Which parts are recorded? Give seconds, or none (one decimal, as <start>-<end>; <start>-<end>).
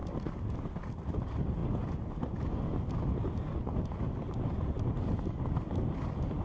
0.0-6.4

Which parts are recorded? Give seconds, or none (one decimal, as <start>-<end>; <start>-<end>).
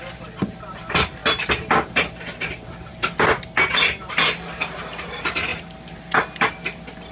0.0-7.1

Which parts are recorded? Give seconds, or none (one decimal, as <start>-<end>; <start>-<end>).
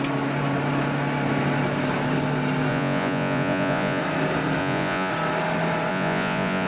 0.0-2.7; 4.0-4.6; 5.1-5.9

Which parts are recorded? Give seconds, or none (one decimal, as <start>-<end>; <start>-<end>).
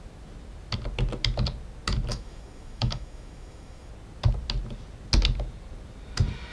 0.0-2.1; 3.9-6.5